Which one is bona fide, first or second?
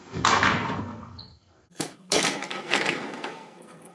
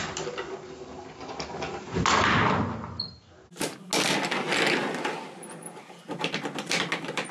second